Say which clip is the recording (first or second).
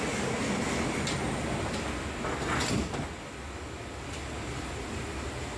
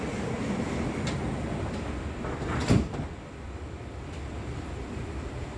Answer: first